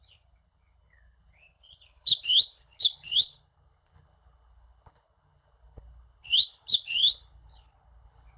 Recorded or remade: remade